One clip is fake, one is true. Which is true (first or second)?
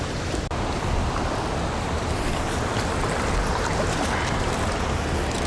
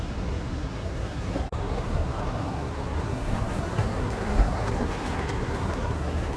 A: first